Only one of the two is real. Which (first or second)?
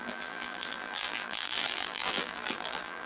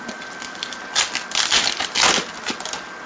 second